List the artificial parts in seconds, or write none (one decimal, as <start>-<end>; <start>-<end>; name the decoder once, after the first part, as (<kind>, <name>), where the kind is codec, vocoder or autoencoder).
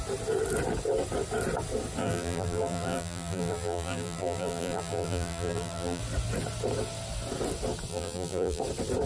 2.0-6.0 (vocoder, BigVGAN v2); 7.9-8.6